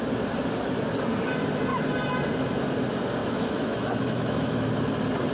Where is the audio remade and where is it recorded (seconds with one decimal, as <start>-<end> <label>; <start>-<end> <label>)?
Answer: 0.0-3.2 recorded; 3.2-4.7 remade; 4.7-5.3 recorded